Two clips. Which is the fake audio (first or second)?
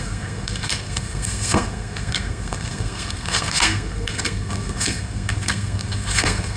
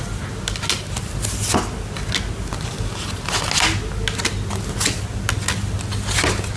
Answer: first